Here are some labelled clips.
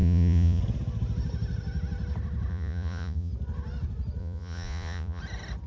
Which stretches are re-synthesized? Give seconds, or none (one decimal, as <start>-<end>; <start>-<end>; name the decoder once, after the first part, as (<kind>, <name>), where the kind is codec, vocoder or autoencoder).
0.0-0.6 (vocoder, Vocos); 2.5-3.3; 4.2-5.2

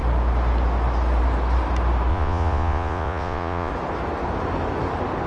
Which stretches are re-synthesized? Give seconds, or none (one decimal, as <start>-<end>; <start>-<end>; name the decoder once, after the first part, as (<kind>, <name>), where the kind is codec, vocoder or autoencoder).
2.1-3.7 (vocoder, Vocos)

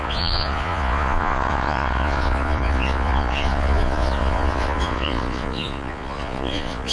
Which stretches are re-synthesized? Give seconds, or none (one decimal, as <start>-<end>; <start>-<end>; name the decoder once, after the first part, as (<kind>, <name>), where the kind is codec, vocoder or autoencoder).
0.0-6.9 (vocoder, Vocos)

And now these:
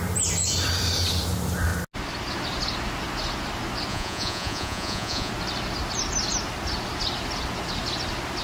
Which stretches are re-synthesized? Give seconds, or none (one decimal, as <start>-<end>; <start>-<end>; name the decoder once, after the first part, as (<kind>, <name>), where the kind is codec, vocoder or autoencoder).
3.9-5.3 (vocoder, Vocos)